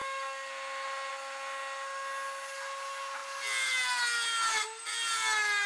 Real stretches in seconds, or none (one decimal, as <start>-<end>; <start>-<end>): 0.0-5.7